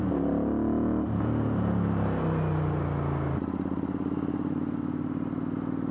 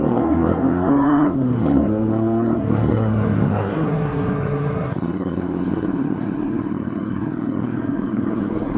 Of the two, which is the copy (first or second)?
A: second